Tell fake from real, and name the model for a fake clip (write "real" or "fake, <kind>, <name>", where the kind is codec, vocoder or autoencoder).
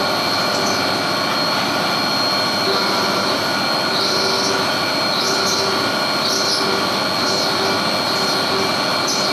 real